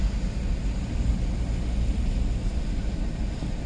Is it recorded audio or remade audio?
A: recorded